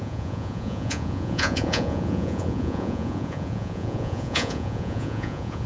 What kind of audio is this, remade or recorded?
remade